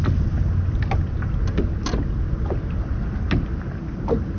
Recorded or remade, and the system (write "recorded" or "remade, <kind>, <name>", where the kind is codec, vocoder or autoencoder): recorded